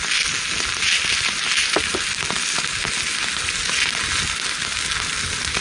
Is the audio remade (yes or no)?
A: no